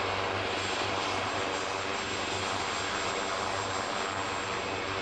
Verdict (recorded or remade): recorded